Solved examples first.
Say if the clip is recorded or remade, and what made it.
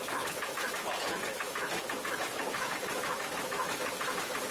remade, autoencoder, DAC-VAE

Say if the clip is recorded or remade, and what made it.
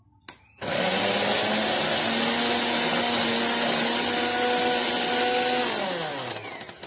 recorded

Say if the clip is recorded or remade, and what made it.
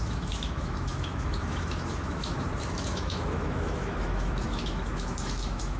remade, autoencoder, DAC-VAE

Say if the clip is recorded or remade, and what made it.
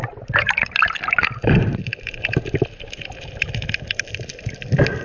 recorded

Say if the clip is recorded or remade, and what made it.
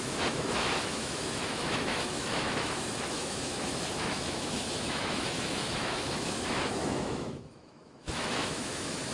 remade, autoencoder, DAC-VAE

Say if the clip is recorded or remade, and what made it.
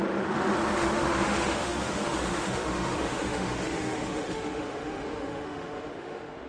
remade, autoencoder, DAC-VAE